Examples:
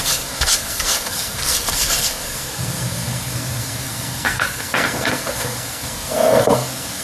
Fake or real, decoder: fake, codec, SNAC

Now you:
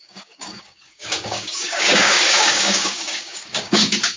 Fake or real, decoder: fake, codec, DAC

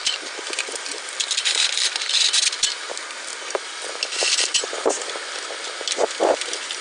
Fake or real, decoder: real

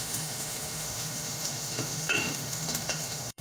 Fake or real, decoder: fake, autoencoder, DAC-VAE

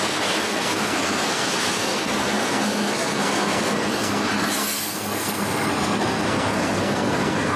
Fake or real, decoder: fake, codec, SNAC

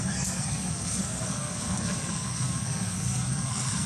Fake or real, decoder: fake, codec, SNAC